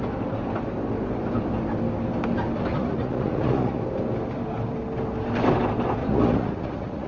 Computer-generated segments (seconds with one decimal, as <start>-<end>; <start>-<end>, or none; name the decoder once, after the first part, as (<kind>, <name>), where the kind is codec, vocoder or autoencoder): 2.7-3.8 (vocoder, Vocos); 6.0-7.1